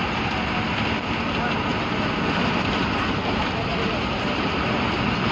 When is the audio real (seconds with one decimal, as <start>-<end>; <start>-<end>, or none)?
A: 0.0-5.3